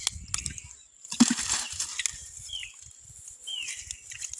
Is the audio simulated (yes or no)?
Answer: no